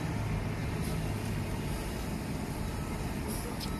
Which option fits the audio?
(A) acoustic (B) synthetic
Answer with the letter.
A